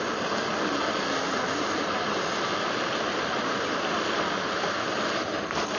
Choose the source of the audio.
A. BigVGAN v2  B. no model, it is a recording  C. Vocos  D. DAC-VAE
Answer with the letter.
B